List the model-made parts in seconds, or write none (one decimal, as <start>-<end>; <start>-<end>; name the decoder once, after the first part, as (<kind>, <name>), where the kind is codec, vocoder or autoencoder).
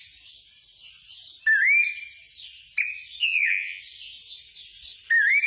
3.2-3.8 (vocoder, Vocos)